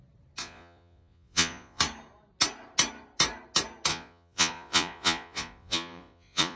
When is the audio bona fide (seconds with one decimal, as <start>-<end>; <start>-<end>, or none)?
0.0-0.4; 1.8-3.9